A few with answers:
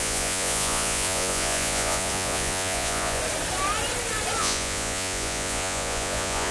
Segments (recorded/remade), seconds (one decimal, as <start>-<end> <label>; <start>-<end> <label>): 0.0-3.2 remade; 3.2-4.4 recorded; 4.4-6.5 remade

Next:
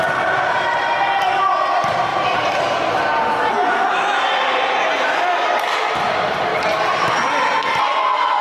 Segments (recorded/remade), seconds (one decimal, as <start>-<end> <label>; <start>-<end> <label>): 0.0-8.4 recorded

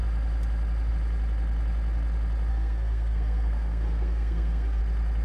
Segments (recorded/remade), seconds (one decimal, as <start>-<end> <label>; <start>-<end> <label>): 0.0-2.5 recorded; 2.5-4.8 remade; 4.8-5.2 recorded